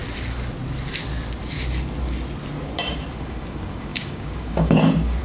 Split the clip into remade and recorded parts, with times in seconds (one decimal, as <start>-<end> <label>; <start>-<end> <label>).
0.0-3.1 recorded; 3.1-5.2 remade